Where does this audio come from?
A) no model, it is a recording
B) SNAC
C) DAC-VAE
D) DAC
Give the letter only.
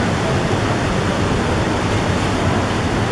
A